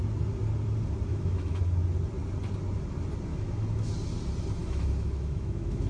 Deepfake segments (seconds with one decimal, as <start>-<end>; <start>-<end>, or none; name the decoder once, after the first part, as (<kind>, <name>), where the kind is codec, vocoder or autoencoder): 1.1-1.6 (autoencoder, DAC-VAE); 3.3-3.9; 4.6-5.9